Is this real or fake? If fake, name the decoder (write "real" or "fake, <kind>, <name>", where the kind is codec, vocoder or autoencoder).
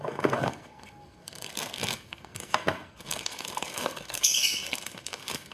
fake, codec, SNAC